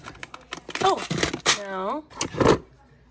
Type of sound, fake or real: real